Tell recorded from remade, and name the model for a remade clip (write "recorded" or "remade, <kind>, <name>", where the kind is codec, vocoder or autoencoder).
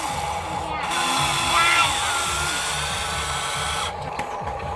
recorded